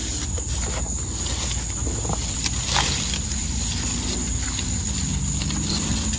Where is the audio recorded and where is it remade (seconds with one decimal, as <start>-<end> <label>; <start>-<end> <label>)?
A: 0.0-2.3 recorded; 2.3-5.1 remade; 5.1-5.7 recorded; 5.7-6.2 remade